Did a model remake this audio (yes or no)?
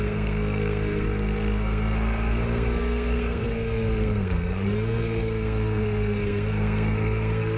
yes